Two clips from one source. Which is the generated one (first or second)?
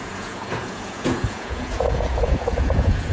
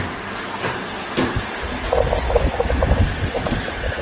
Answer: first